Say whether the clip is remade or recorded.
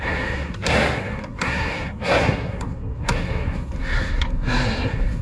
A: remade